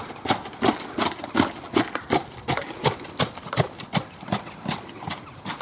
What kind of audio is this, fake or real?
real